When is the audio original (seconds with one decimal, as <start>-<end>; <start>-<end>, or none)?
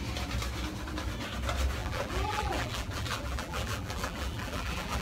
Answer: 0.0-1.8